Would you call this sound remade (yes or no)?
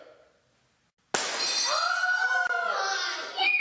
no